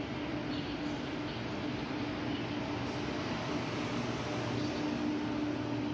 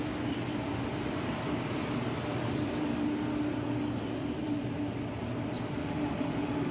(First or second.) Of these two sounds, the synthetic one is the second